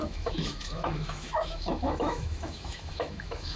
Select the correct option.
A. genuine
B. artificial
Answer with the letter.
B